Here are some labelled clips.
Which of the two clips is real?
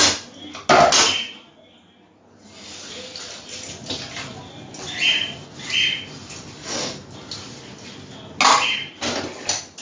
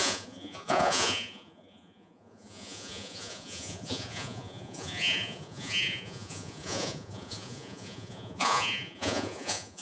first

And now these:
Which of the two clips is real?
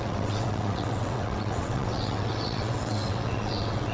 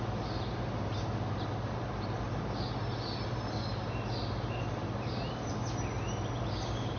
second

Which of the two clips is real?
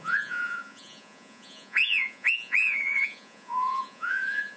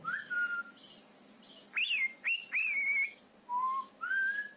second